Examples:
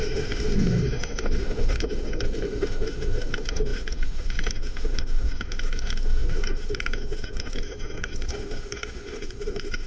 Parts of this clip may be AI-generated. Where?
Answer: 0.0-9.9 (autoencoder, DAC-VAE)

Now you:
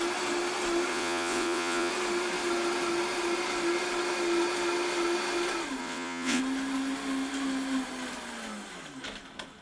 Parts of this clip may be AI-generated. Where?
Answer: 0.9-1.9 (vocoder, WaveNeXt); 5.8-6.4

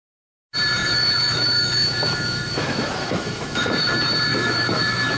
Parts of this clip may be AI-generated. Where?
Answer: 0.8-3.9 (autoencoder, DAC-VAE); 4.3-5.2

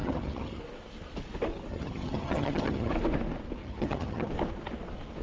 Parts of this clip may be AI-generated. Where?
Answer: 0.0-0.6 (vocoder, HiFi-GAN); 1.7-2.9; 3.6-4.3

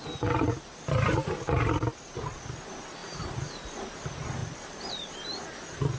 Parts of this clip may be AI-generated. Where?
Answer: 3.0-3.6 (vocoder, BigVGAN v2); 4.4-5.1